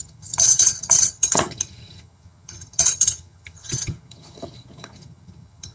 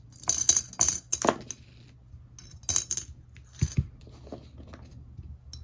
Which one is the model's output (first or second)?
first